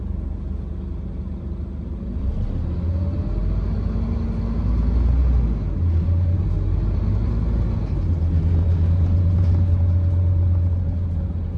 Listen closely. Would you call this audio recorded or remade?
recorded